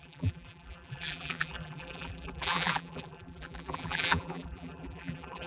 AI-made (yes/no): yes